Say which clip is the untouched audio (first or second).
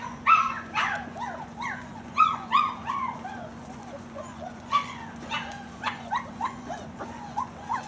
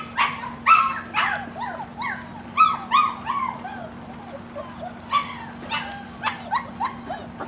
second